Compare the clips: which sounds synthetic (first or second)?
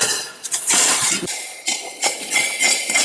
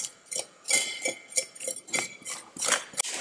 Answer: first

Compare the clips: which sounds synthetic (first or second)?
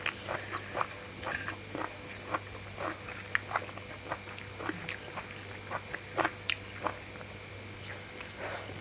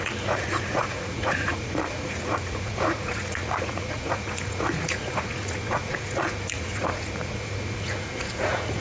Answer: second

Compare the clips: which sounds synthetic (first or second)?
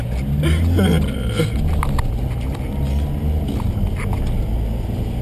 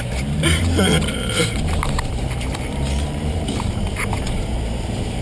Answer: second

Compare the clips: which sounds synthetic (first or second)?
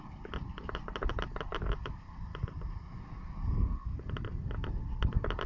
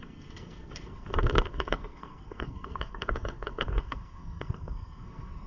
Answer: second